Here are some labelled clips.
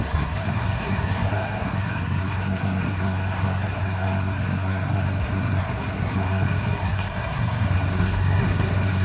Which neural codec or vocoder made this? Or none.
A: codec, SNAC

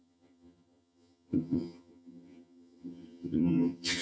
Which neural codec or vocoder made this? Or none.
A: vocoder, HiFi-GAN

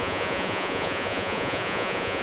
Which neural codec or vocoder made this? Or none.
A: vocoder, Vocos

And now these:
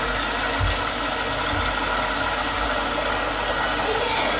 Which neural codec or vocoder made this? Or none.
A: none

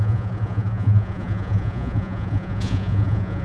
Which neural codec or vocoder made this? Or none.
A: vocoder, Vocos